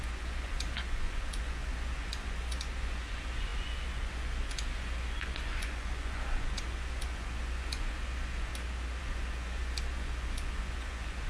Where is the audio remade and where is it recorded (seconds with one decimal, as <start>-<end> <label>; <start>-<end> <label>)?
0.0-8.5 remade; 8.5-9.0 recorded; 9.0-11.3 remade